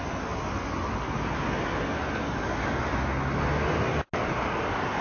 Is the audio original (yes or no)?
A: yes